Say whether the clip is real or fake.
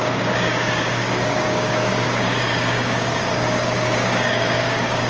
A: fake